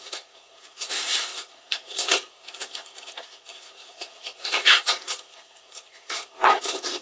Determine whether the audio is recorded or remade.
remade